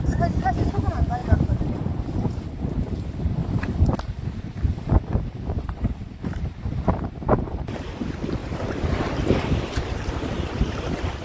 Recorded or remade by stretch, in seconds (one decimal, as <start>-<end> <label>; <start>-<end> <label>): 0.0-3.4 recorded; 3.4-7.9 remade; 7.9-8.4 recorded; 8.4-10.7 remade; 10.7-11.2 recorded